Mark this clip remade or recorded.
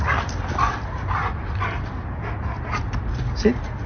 recorded